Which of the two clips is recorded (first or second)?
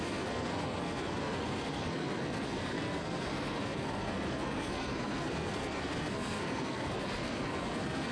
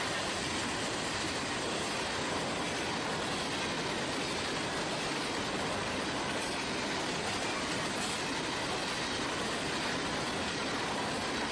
second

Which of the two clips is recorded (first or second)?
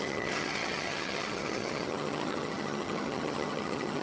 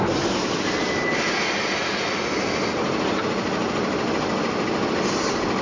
second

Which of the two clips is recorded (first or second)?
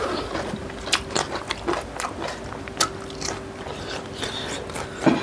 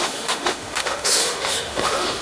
first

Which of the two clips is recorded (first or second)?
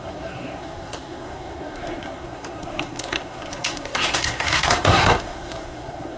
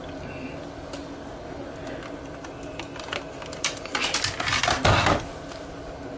second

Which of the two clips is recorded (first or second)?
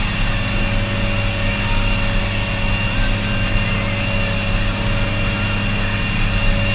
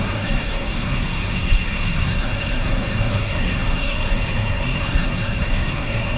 first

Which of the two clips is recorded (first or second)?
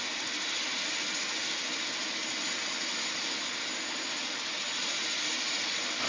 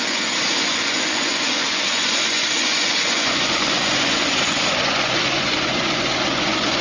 first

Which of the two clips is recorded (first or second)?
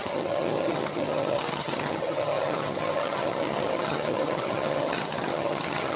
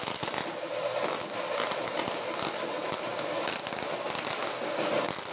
second